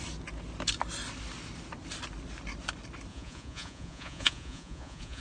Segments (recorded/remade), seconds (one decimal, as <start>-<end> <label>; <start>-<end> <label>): 0.0-3.1 recorded; 3.1-5.2 remade